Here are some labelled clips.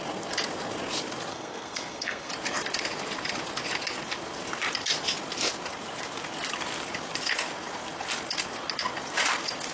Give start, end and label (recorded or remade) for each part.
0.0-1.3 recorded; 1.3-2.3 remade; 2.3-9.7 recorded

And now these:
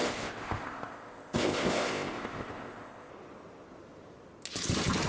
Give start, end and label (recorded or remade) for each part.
0.0-3.1 remade; 3.1-5.1 recorded